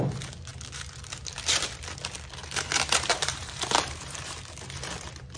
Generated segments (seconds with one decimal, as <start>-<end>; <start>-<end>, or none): 2.4-4.4